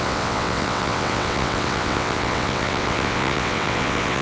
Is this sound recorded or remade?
remade